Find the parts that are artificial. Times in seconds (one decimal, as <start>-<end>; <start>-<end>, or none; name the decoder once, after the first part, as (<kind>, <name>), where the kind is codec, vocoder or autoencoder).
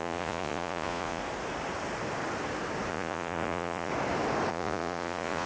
0.0-1.2 (vocoder, Vocos); 2.9-3.9; 4.5-5.5